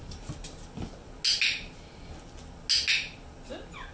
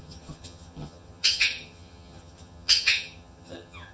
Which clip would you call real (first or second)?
first